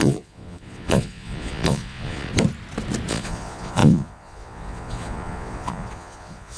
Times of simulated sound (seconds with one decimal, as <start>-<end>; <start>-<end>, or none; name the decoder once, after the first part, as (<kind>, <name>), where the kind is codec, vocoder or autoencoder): 0.0-2.3 (vocoder, Vocos); 3.1-6.6